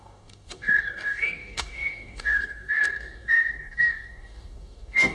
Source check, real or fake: fake